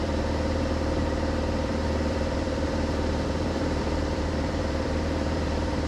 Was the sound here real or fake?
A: fake